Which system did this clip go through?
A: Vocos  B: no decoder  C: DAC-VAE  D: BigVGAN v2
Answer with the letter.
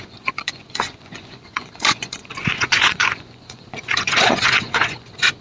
A